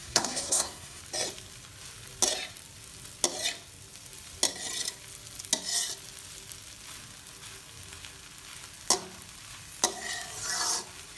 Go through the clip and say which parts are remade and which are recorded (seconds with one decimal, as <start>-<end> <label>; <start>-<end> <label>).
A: 0.0-1.0 remade; 1.0-11.2 recorded